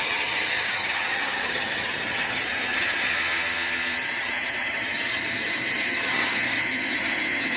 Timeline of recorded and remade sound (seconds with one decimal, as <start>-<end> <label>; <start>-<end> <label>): 0.0-3.1 remade; 3.1-4.0 recorded; 4.0-7.6 remade